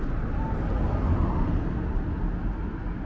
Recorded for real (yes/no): yes